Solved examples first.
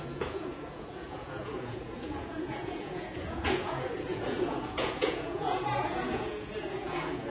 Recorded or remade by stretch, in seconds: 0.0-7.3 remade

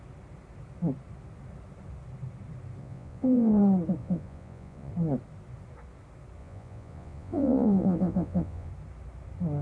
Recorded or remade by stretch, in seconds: 0.0-2.8 recorded; 2.8-3.6 remade; 3.6-4.0 recorded; 4.0-4.9 remade; 4.9-6.4 recorded; 6.4-8.7 remade; 8.7-9.6 recorded

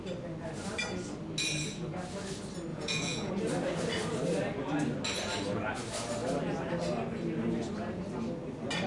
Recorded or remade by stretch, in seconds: 0.0-2.7 recorded; 2.7-3.3 remade; 3.3-8.9 recorded

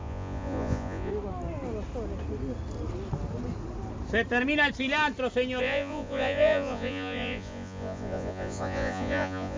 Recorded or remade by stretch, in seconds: 0.0-1.1 remade; 1.1-5.6 recorded; 5.6-9.6 remade